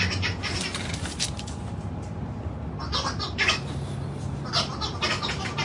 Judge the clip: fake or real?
real